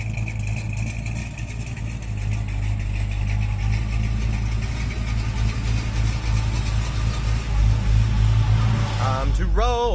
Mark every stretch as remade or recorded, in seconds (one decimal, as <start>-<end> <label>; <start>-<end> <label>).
0.0-1.2 recorded; 1.2-1.8 remade; 1.8-9.9 recorded